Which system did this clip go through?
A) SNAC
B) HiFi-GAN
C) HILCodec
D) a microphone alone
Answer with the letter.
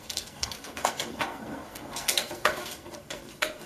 A